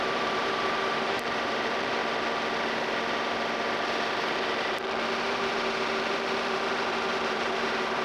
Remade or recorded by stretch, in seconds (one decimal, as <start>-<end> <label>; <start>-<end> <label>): 0.0-2.0 remade; 2.0-5.2 recorded; 5.2-8.0 remade